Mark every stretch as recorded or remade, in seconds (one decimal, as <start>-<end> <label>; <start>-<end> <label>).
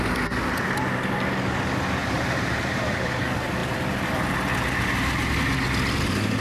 0.0-2.0 recorded; 2.0-3.2 remade; 3.2-6.4 recorded